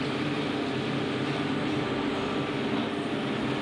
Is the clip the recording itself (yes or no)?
yes